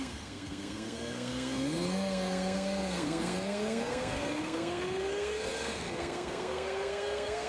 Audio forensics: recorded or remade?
remade